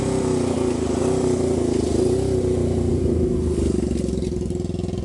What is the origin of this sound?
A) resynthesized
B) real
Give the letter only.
B